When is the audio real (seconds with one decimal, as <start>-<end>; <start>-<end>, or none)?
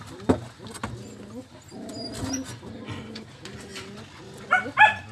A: 0.0-5.1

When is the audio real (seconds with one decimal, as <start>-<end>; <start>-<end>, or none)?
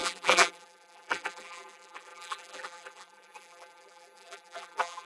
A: none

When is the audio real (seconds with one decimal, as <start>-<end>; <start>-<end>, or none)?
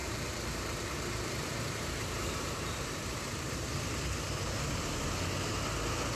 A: 3.7-6.2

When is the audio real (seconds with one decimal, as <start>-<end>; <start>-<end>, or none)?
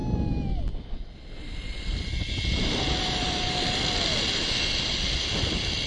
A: 0.0-0.6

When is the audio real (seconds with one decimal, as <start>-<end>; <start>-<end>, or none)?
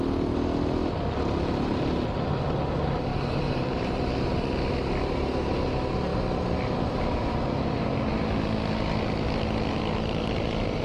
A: 0.0-3.1; 4.4-10.8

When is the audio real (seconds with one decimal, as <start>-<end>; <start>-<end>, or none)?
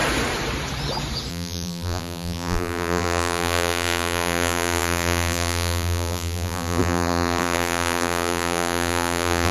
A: 0.0-1.3